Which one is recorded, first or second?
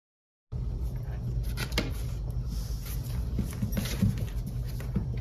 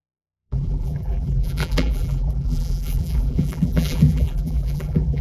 first